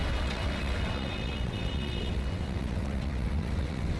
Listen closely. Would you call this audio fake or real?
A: fake